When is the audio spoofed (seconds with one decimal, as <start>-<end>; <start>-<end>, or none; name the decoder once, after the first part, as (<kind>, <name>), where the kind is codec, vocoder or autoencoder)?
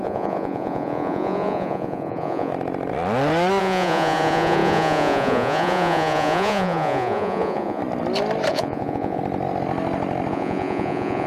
0.0-2.5 (vocoder, Vocos); 3.6-7.8; 8.5-9.2; 10.3-11.3